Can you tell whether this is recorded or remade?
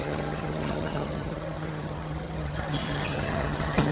remade